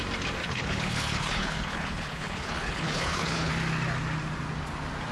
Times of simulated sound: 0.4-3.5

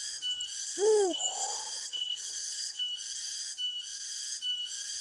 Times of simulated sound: 0.6-1.2; 1.8-2.8

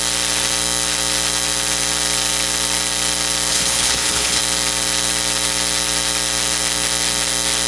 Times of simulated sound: 3.5-4.4

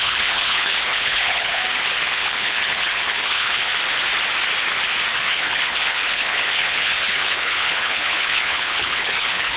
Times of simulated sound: 0.0-1.6; 2.1-3.7; 5.1-9.6

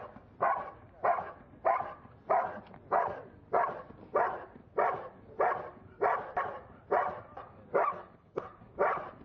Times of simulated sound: 7.9-8.6

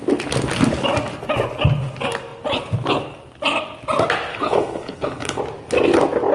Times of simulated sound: 4.3-5.4

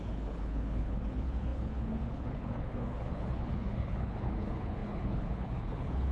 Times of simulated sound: 0.0-6.1